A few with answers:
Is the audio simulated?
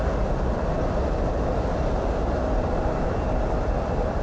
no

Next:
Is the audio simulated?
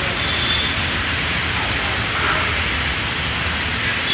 no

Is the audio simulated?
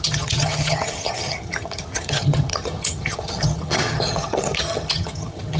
yes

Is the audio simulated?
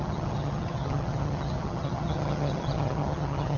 yes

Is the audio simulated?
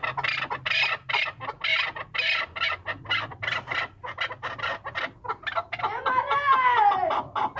no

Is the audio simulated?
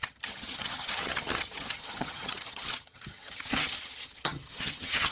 yes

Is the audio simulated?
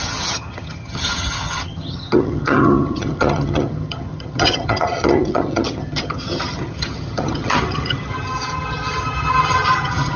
yes